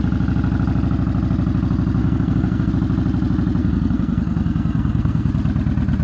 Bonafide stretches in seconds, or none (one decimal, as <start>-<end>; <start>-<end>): 0.0-2.0; 2.7-3.6; 5.3-6.0